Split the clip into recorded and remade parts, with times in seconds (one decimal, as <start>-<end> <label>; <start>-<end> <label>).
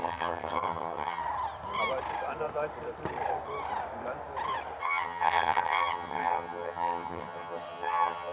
0.0-1.2 remade; 1.2-4.8 recorded; 4.8-8.3 remade